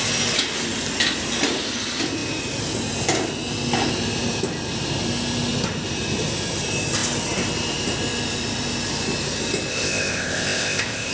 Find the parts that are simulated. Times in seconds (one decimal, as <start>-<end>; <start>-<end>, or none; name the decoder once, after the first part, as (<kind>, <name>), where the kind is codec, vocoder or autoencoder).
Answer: 9.7-11.1 (codec, ZipCodec)